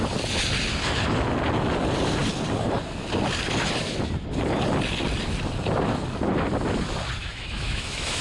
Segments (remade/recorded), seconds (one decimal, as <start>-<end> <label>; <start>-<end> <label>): 0.0-7.2 recorded; 7.2-8.2 remade